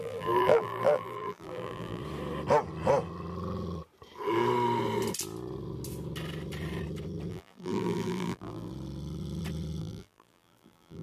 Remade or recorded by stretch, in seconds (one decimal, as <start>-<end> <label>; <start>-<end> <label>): 0.0-2.0 remade; 2.0-7.3 recorded; 7.3-8.7 remade; 8.7-9.8 recorded; 9.8-11.0 remade